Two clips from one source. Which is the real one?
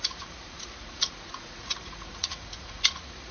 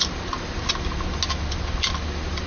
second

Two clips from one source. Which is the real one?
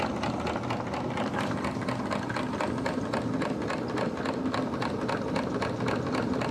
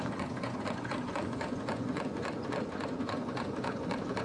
first